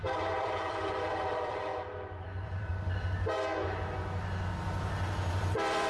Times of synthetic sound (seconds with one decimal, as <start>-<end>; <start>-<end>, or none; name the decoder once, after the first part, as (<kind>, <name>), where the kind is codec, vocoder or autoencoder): 0.0-1.7 (vocoder, BigVGAN v2); 2.2-2.7; 5.3-5.9